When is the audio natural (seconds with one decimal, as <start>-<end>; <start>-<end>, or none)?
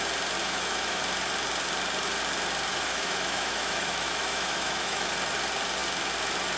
0.0-0.4; 1.0-2.7; 5.1-6.6